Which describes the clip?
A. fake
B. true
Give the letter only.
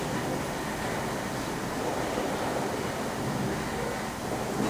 B